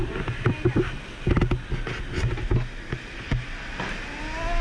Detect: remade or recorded recorded